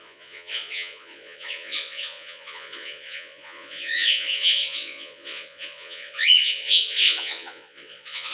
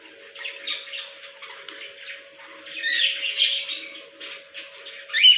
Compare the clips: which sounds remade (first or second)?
first